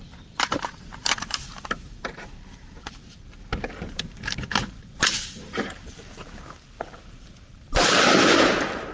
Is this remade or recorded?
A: remade